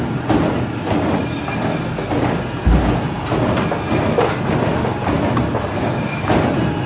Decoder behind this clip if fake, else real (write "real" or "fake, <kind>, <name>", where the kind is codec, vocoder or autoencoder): real